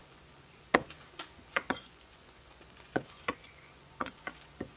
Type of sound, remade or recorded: remade